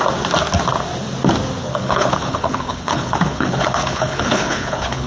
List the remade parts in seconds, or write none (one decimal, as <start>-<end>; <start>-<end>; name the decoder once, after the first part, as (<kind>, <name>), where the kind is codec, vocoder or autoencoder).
1.6-5.1 (codec, HILCodec)